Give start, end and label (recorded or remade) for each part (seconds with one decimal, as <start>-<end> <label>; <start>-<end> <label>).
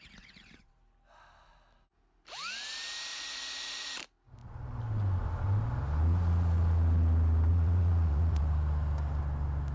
0.0-3.1 recorded; 3.1-3.9 remade; 3.9-7.5 recorded; 7.5-8.4 remade; 8.4-9.7 recorded